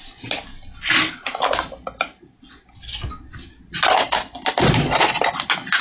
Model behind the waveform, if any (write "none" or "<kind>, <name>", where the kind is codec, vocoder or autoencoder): none